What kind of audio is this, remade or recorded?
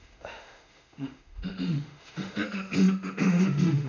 remade